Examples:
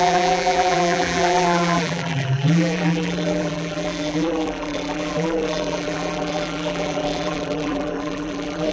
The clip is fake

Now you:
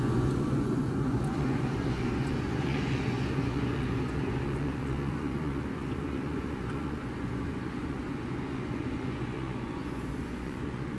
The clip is fake